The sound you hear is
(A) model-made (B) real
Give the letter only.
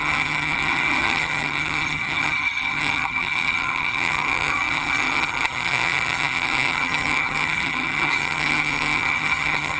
A